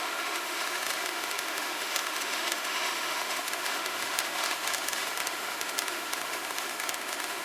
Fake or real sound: fake